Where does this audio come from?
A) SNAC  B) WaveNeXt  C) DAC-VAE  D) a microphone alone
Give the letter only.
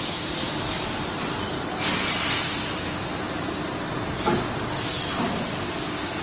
D